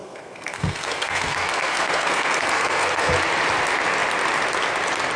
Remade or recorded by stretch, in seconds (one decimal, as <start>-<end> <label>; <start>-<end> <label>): 0.0-3.1 remade; 3.1-5.2 recorded